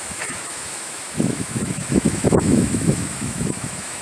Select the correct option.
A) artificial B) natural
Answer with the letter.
A